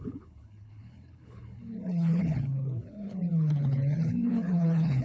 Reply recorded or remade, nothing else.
remade